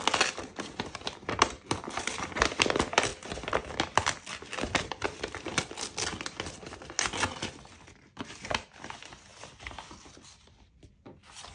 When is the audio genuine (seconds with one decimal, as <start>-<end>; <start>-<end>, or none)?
0.0-11.5